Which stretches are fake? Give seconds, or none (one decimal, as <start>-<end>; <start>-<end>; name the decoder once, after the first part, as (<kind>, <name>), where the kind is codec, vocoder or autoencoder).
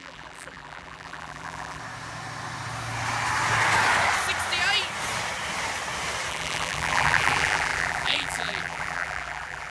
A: 0.0-1.8 (vocoder, BigVGAN v2); 6.3-9.7